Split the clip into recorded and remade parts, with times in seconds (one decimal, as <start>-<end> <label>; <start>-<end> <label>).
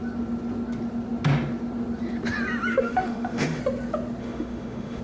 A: 0.0-2.7 recorded; 2.7-3.6 remade; 3.6-4.2 recorded; 4.2-5.0 remade